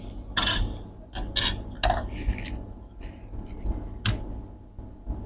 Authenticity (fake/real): real